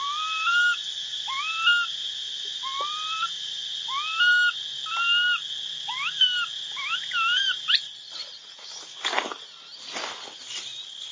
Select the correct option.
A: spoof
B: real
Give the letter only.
B